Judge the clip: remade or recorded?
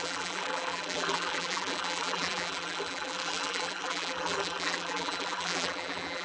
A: remade